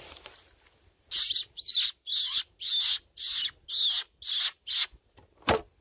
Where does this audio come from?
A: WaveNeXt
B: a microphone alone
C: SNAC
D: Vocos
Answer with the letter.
B